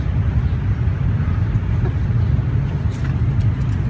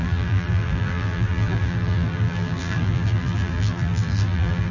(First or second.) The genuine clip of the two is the first